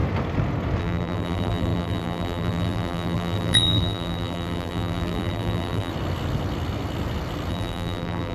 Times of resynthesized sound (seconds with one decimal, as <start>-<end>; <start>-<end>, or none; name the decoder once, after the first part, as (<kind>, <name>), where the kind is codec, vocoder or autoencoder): 0.8-5.9 (vocoder, BigVGAN v2); 7.5-8.3